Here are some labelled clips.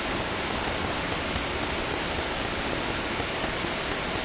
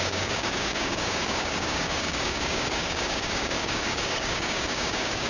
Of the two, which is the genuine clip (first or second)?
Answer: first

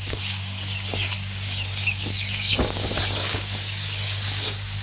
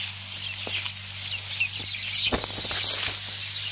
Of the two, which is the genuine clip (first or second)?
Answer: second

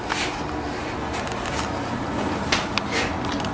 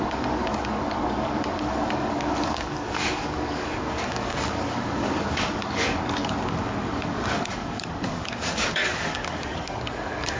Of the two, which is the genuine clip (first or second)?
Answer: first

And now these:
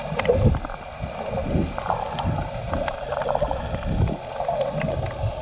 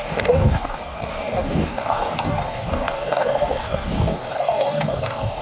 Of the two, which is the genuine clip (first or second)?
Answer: first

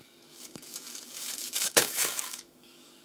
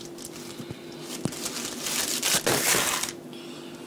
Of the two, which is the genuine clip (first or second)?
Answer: second